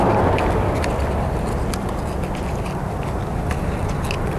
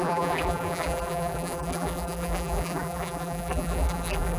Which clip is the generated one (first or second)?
second